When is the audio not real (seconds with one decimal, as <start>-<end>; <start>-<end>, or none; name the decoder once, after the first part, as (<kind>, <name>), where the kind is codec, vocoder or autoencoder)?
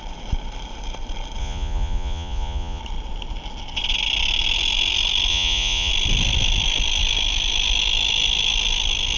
1.4-2.8 (vocoder, Vocos); 5.3-5.9